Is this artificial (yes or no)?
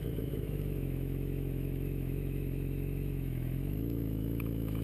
yes